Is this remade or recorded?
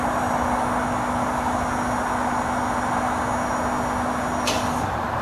recorded